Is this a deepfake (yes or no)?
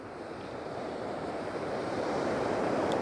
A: yes